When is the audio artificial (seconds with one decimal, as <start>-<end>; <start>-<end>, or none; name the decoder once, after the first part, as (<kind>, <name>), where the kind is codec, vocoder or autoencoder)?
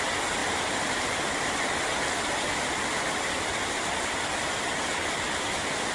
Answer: 0.4-3.9 (vocoder, BigVGAN v2)